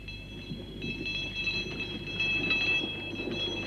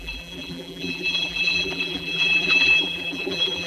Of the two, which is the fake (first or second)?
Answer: second